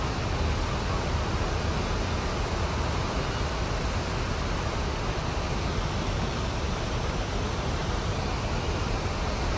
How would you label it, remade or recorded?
recorded